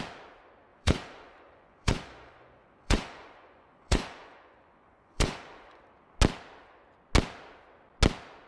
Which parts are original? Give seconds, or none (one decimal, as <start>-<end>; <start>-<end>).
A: 0.0-0.7; 5.8-8.5